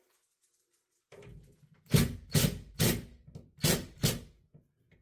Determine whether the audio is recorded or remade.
recorded